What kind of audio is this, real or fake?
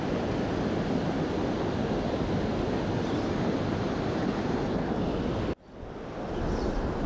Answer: real